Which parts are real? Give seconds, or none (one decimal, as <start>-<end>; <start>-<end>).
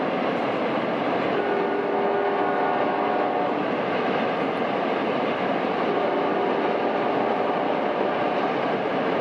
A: 0.0-9.2